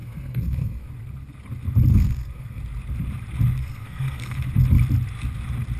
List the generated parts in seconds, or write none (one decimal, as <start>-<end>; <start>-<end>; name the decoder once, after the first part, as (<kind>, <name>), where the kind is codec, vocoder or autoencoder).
0.0-0.9 (codec, SNAC); 1.9-2.6; 3.6-4.5